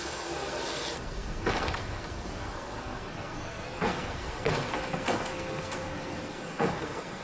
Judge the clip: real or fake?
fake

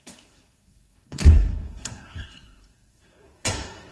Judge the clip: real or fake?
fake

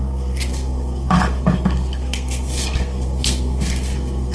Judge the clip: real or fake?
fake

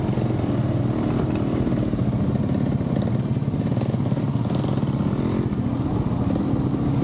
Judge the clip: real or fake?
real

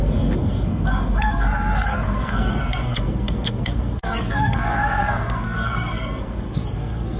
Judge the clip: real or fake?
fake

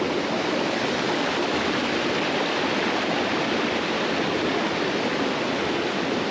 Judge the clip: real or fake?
real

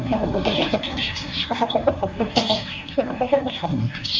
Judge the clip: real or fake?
fake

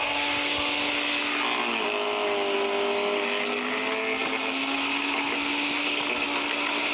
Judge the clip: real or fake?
real